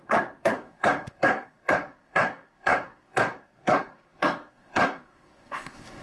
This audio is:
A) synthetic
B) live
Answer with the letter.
A